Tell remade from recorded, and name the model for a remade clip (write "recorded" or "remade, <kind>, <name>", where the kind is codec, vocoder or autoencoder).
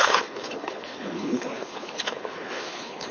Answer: remade, codec, HILCodec